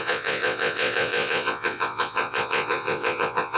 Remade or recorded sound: remade